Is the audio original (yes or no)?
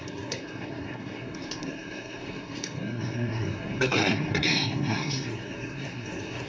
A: no